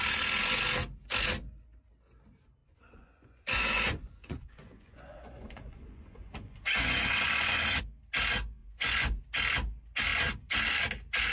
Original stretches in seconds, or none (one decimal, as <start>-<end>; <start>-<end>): 0.0-2.6; 7.8-8.6; 9.2-11.3